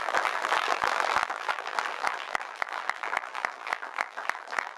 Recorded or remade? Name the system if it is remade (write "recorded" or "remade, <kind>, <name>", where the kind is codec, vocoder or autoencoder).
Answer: remade, vocoder, BigVGAN v2